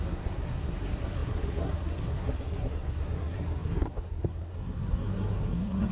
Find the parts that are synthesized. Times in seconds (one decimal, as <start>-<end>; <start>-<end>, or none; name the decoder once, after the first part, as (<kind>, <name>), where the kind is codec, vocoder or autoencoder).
0.0-5.9 (codec, SNAC)